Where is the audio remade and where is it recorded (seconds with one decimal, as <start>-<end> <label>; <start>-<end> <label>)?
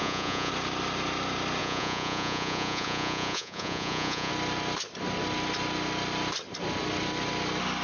0.0-0.5 remade; 0.5-1.6 recorded; 1.6-4.3 remade; 4.3-7.8 recorded